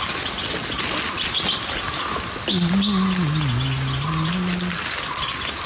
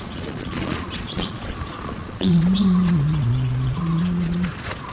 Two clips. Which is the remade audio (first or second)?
second